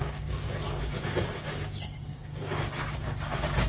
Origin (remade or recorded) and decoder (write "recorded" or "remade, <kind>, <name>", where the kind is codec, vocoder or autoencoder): remade, codec, DAC